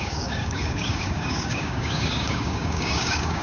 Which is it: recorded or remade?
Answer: remade